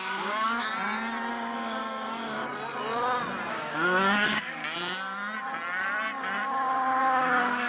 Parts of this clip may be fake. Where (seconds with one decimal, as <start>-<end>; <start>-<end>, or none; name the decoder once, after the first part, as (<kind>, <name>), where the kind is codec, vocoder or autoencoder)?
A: 0.0-0.7 (codec, DAC); 1.3-2.4; 3.5-4.6; 7.0-7.7